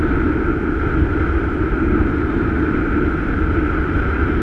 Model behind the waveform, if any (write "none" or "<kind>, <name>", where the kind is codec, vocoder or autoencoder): none